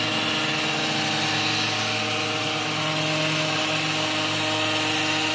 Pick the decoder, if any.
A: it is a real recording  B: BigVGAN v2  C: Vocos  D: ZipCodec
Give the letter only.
A